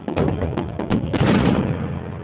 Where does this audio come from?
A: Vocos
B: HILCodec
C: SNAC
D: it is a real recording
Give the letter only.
A